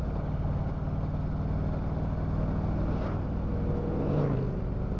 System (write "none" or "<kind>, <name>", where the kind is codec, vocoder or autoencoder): none